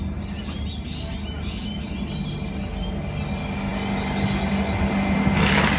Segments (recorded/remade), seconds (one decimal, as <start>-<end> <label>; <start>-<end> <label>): 0.0-5.8 recorded